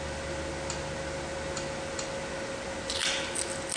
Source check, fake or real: real